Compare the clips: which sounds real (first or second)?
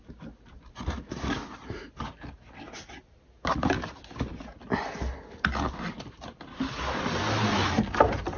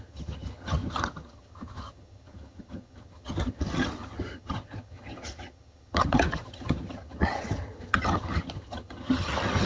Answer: first